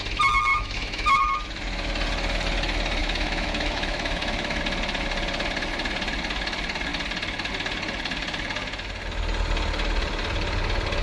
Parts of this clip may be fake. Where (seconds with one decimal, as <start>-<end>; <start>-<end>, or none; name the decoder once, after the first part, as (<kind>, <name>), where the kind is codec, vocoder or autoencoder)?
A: 0.5-1.2 (autoencoder, DAC-VAE); 3.0-4.6